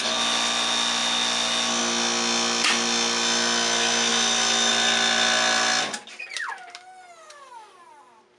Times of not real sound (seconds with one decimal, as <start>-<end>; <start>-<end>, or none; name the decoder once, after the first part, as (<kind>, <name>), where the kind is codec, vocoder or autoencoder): none